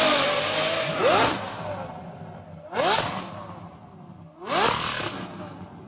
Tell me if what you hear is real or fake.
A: real